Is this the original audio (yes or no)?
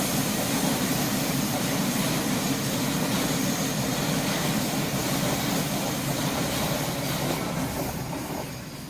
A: yes